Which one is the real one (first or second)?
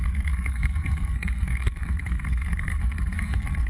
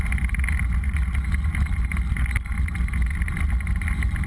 second